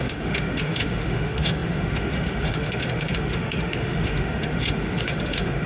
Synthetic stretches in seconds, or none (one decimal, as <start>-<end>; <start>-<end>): 0.0-5.7